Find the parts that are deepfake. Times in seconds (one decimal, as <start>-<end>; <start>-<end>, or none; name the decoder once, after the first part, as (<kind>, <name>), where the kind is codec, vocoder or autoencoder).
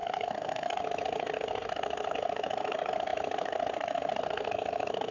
0.0-5.1 (codec, SNAC)